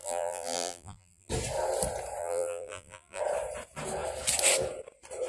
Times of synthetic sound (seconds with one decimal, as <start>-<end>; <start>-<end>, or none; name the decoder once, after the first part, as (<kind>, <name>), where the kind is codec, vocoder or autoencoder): 0.0-1.3 (vocoder, BigVGAN v2); 2.2-3.2